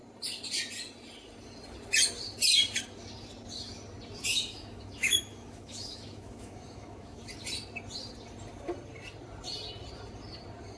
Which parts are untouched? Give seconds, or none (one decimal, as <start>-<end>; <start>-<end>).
0.0-4.3; 7.2-10.8

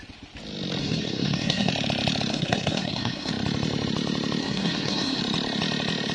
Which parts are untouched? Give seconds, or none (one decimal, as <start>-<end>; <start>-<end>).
0.0-0.8; 1.7-2.3; 3.3-4.4; 5.2-6.1

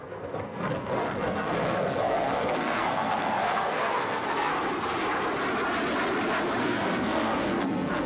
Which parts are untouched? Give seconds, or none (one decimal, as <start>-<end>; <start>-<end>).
4.5-6.6

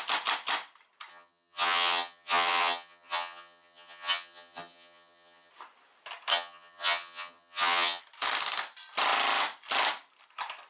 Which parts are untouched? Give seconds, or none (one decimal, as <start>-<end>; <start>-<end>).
0.0-1.1; 5.5-6.3; 8.0-10.7

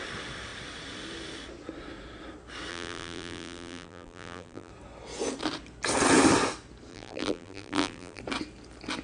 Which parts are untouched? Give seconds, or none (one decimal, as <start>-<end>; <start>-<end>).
0.0-2.7; 4.7-6.9; 8.2-9.0

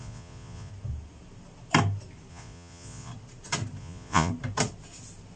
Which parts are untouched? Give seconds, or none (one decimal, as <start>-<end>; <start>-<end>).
0.7-2.3; 3.1-3.8; 4.3-5.4

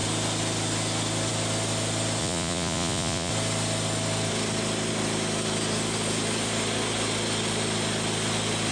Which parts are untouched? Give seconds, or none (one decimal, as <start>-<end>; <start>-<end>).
0.0-2.2; 3.3-8.7

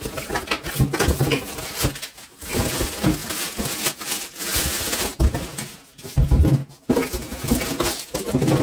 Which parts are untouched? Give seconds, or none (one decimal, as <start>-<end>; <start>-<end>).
0.0-8.6